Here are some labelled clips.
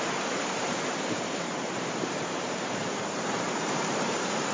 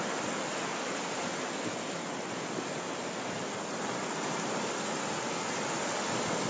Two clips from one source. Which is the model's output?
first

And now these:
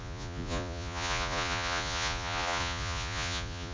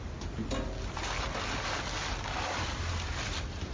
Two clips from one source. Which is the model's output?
first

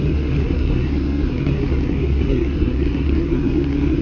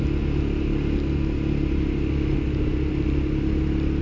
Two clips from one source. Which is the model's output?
first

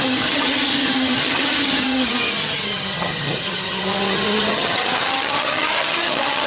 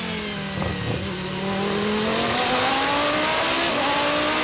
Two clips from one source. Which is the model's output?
first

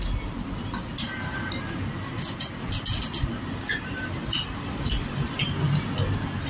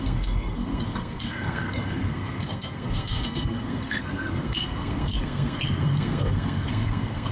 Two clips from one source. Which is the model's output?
second